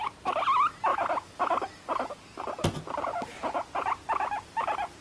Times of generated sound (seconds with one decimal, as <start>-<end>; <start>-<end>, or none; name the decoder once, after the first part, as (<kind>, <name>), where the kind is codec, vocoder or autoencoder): none